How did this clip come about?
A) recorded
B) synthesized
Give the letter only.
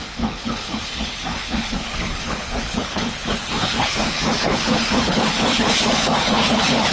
B